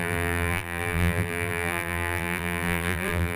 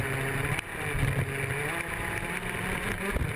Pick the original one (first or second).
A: second